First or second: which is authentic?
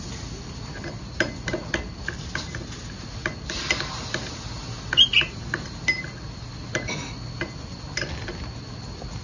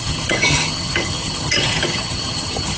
first